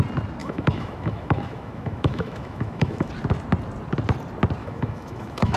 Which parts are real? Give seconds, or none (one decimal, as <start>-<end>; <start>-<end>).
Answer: 0.0-0.4; 3.1-4.6